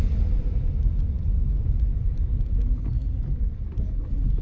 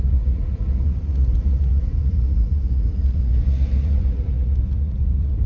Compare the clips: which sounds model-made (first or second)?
second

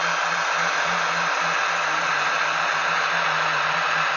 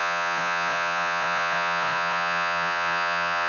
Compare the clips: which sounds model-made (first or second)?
second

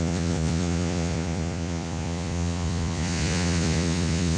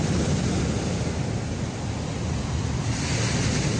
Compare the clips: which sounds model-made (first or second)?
first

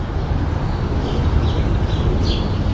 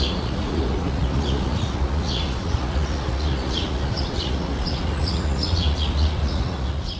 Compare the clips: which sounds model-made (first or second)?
second